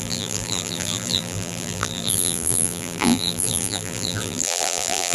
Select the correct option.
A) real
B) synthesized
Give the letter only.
B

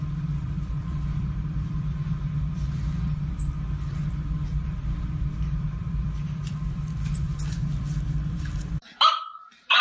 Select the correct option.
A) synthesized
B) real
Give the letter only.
A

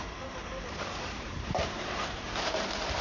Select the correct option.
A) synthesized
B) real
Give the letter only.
A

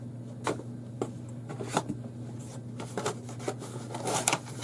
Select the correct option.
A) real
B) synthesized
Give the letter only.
A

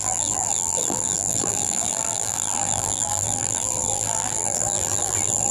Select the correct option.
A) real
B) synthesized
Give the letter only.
B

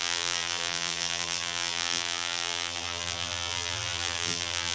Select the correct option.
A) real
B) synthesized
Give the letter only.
B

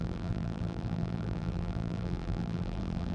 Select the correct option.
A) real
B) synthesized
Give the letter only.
B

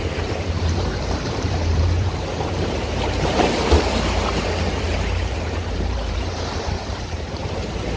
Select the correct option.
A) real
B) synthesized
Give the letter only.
B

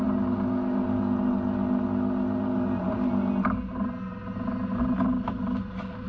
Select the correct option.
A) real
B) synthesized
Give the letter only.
A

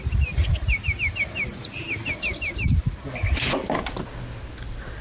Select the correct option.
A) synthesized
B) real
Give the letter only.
B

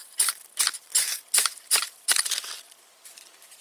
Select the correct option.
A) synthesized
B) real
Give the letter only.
A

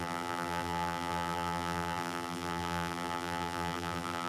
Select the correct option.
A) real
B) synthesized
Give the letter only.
B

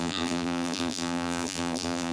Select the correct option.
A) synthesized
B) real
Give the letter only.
A